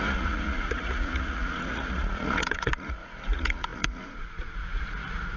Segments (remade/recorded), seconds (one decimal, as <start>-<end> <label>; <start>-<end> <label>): 0.0-5.4 remade